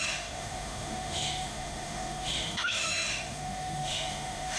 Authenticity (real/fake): fake